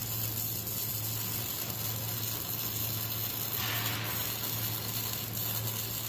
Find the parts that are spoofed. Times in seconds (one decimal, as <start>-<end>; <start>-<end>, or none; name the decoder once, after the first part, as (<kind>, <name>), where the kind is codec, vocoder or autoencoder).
none